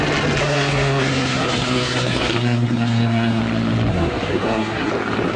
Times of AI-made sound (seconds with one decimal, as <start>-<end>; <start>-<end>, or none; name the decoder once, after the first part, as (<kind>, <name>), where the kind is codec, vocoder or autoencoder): 0.4-3.4 (codec, SNAC); 3.9-4.9